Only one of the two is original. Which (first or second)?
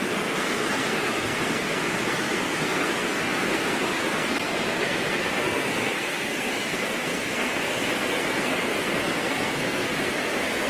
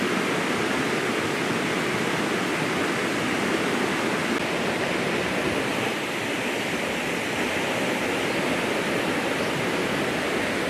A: second